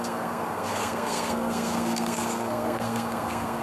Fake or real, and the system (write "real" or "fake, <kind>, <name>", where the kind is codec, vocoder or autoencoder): fake, codec, SNAC